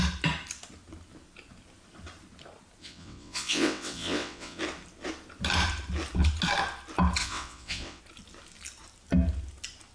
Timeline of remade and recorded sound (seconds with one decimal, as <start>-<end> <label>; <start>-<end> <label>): 0.0-2.8 recorded; 2.8-4.6 remade; 4.6-7.2 recorded; 7.2-8.0 remade; 8.0-9.9 recorded